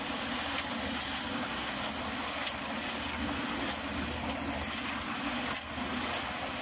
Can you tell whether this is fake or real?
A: real